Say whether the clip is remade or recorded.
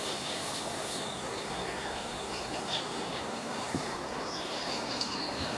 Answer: remade